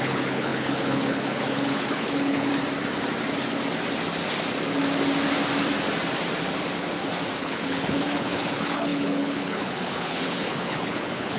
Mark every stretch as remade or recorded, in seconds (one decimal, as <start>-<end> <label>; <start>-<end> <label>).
0.0-2.5 remade; 2.5-7.4 recorded; 7.4-11.4 remade